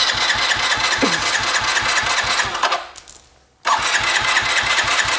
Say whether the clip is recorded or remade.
recorded